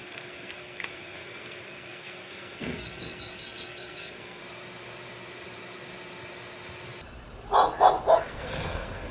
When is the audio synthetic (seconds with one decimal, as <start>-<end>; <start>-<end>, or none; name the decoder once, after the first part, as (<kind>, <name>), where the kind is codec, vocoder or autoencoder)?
0.0-4.4 (codec, SNAC); 8.2-9.1